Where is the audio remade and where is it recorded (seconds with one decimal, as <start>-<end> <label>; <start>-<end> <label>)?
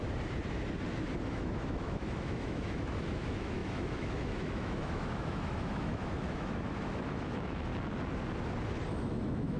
0.0-1.3 recorded; 1.3-7.7 remade; 7.7-8.9 recorded; 8.9-9.6 remade